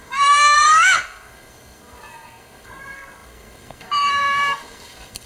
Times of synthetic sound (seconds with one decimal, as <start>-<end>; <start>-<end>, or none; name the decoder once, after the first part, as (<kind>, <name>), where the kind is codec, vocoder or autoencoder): 0.0-5.3 (codec, SNAC)